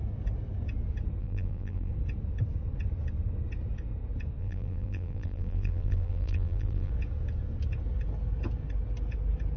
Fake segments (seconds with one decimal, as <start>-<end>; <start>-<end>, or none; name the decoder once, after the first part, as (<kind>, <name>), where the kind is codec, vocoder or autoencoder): 1.2-1.9 (vocoder, BigVGAN v2); 4.4-6.9

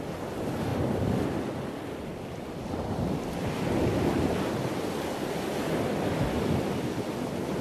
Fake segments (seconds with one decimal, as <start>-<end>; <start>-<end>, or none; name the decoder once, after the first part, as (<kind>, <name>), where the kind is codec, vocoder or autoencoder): 0.7-4.9 (vocoder, BigVGAN v2)

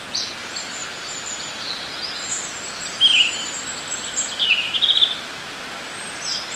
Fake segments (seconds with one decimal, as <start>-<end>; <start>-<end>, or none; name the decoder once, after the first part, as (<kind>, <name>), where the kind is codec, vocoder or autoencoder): 0.8-1.5 (vocoder, BigVGAN v2)

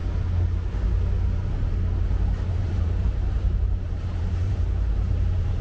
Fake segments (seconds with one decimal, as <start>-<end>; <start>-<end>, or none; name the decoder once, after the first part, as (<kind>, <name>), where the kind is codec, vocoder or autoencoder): 2.5-5.6 (vocoder, BigVGAN v2)

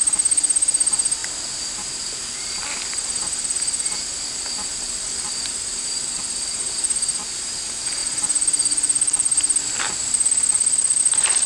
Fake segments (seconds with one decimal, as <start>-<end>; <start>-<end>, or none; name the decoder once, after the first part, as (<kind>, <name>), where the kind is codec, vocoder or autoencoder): 1.2-6.2 (vocoder, BigVGAN v2); 8.0-11.0

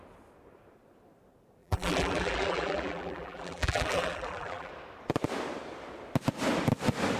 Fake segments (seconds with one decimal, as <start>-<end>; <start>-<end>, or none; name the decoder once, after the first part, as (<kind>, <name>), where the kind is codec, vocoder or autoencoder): 1.6-4.7 (vocoder, BigVGAN v2)

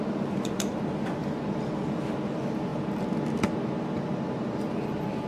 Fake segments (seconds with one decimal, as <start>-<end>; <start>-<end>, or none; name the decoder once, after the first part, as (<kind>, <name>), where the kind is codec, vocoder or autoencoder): 1.2-2.1 (vocoder, BigVGAN v2)